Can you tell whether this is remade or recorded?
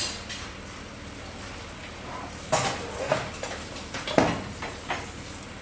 recorded